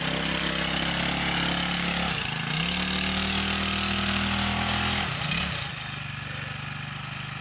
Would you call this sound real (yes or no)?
yes